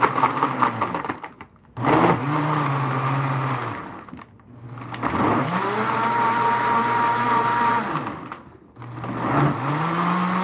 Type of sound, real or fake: real